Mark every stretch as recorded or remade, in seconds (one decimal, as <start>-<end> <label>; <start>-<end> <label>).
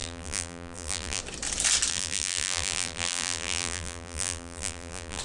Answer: 0.0-1.2 remade; 1.2-1.9 recorded; 1.9-5.2 remade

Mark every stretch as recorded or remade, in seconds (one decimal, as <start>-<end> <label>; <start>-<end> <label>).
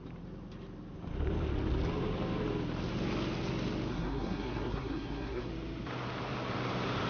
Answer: 0.0-3.9 recorded; 3.9-5.5 remade; 5.5-7.1 recorded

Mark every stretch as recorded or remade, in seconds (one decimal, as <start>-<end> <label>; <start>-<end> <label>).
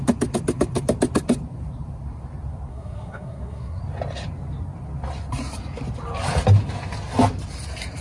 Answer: 0.0-2.7 recorded; 2.7-3.8 remade; 3.8-8.0 recorded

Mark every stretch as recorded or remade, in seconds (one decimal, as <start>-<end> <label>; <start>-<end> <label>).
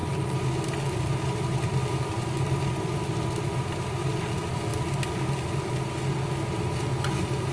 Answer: 0.0-7.5 recorded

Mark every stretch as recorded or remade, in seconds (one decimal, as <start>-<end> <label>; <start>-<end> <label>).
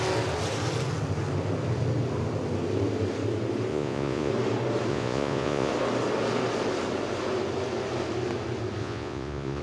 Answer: 0.0-3.7 recorded; 3.7-4.3 remade; 4.3-4.9 recorded; 4.9-5.7 remade; 5.7-8.8 recorded; 8.8-9.6 remade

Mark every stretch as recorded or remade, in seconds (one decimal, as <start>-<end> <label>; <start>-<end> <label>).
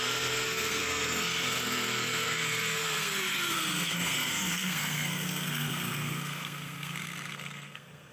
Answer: 0.0-8.1 remade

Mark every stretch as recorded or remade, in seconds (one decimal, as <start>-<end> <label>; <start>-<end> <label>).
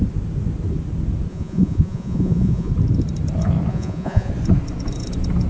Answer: 0.0-1.3 recorded; 1.3-2.7 remade; 2.7-3.7 recorded; 3.7-4.3 remade; 4.3-5.5 recorded